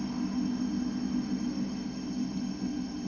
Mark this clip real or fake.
real